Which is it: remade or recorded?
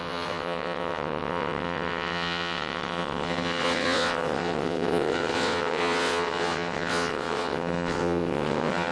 remade